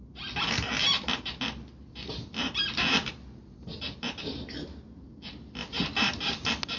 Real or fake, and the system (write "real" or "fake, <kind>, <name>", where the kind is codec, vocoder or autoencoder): real